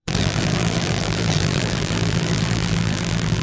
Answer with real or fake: fake